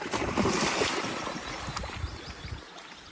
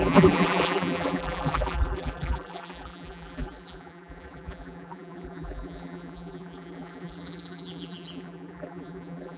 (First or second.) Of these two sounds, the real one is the first